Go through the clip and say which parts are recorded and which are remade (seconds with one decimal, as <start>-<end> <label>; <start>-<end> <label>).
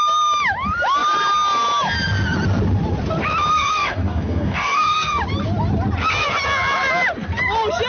0.0-3.5 recorded; 3.5-5.2 remade; 5.2-7.9 recorded